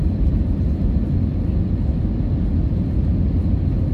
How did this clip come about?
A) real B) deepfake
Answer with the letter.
A